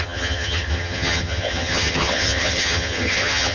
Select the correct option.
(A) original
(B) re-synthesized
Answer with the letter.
B